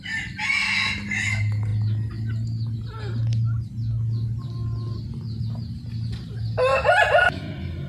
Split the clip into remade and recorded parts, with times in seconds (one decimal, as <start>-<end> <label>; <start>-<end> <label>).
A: 0.0-7.9 recorded